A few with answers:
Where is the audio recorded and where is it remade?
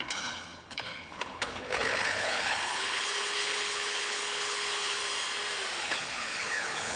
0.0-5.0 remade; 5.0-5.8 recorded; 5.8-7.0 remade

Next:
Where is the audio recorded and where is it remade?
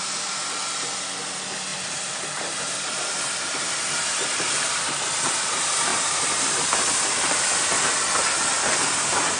0.0-1.7 recorded; 1.7-2.8 remade; 2.8-5.9 recorded; 5.9-7.0 remade; 7.0-9.4 recorded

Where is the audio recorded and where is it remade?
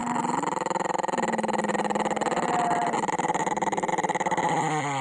0.0-5.0 recorded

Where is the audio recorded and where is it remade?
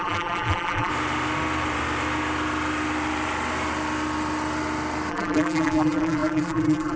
0.0-0.9 remade; 0.9-5.1 recorded; 5.1-7.0 remade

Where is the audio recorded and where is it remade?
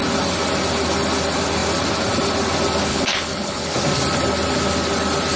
0.0-2.9 recorded; 2.9-3.7 remade; 3.7-5.4 recorded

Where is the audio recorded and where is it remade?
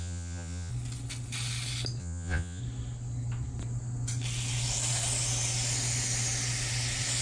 0.0-0.7 remade; 0.7-2.0 recorded; 2.0-2.6 remade; 2.6-7.2 recorded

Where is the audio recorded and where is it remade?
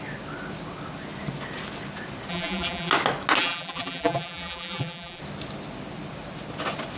0.0-2.3 recorded; 2.3-2.9 remade; 2.9-3.4 recorded; 3.4-5.2 remade; 5.2-7.0 recorded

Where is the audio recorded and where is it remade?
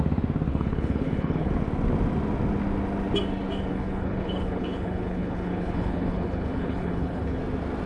0.0-0.5 recorded; 0.5-1.5 remade; 1.5-3.7 recorded; 3.7-7.4 remade; 7.4-7.9 recorded